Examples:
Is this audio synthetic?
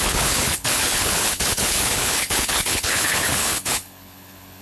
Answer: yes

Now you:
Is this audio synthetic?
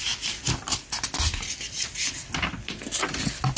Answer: no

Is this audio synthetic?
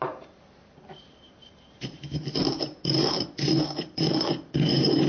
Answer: yes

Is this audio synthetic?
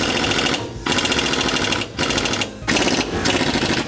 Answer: no